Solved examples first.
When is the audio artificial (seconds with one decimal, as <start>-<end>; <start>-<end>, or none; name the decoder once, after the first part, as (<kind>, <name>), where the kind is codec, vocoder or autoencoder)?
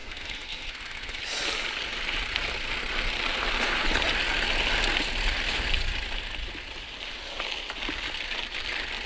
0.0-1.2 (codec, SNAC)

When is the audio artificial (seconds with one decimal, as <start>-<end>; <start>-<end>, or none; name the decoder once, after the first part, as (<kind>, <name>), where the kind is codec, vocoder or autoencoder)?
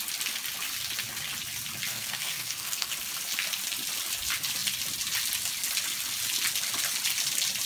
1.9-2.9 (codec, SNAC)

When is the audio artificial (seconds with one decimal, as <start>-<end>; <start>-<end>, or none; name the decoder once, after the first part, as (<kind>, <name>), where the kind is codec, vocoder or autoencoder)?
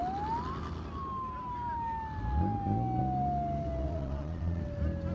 3.8-4.6 (vocoder, Vocos)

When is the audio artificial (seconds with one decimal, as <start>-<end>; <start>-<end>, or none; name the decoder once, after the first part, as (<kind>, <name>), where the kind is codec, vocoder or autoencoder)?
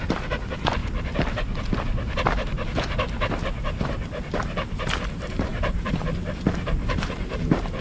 0.0-0.8 (vocoder, BigVGAN v2); 3.6-7.8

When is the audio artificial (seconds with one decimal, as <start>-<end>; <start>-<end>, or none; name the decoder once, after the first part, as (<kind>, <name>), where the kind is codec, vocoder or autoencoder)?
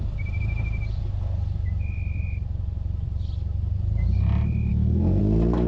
4.7-5.2 (codec, SNAC)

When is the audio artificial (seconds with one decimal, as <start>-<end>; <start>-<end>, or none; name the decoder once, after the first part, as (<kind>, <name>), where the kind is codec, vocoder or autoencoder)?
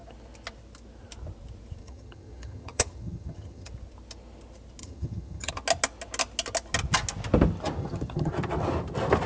1.8-3.7 (vocoder, HiFi-GAN); 4.8-5.5; 7.8-8.3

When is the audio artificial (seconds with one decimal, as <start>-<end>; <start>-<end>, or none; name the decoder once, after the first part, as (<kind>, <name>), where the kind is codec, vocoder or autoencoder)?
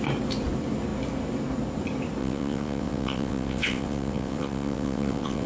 2.2-5.5 (vocoder, WaveNeXt)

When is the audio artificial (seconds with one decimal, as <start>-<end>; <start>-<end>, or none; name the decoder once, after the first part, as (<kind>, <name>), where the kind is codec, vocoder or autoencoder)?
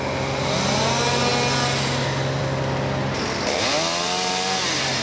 none